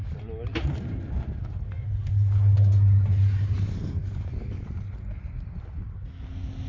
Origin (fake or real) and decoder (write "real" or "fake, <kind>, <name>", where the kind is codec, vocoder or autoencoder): real